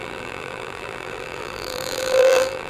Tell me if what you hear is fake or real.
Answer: fake